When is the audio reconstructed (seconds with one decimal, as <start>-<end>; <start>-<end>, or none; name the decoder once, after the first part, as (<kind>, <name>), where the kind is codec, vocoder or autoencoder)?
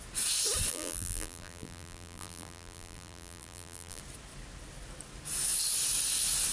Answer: 0.7-4.0 (vocoder, BigVGAN v2)